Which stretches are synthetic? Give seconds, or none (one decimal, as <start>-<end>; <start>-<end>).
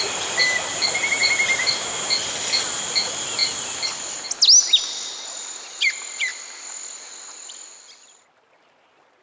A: 6.3-7.0